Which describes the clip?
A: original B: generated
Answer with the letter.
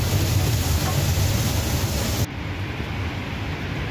A